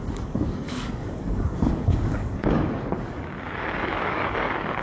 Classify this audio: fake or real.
fake